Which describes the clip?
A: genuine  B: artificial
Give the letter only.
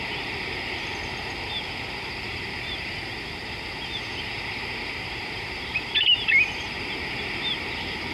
B